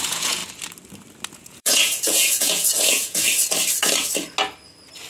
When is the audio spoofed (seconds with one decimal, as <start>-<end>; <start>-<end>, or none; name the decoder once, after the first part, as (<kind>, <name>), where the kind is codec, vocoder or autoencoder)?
0.0-0.4 (vocoder, Vocos); 1.3-3.2